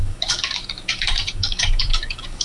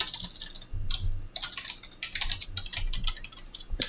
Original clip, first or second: second